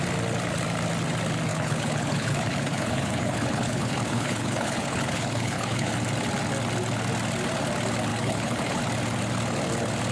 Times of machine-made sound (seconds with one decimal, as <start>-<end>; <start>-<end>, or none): 1.5-5.9; 8.1-8.8